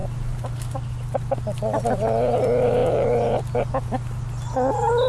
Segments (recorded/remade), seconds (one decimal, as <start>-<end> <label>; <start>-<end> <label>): 0.0-5.1 recorded